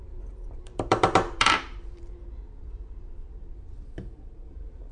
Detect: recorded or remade remade